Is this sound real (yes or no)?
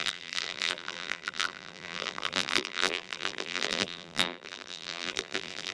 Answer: no